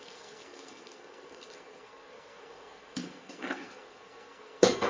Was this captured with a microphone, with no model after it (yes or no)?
no